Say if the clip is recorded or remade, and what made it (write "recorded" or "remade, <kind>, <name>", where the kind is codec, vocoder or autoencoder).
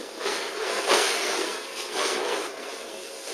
remade, codec, SNAC